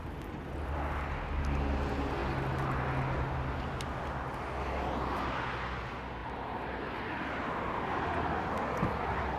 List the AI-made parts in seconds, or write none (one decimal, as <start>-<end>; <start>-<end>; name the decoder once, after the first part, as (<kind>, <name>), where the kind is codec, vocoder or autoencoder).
6.2-7.1 (vocoder, BigVGAN v2)